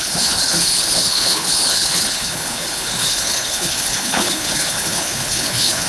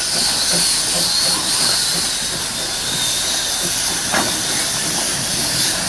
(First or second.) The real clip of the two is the second